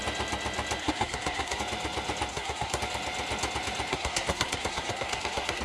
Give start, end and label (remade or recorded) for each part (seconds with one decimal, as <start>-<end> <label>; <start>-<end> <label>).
0.0-0.8 recorded; 0.8-1.6 remade; 1.6-2.3 recorded; 2.3-2.8 remade; 2.8-3.9 recorded; 3.9-5.6 remade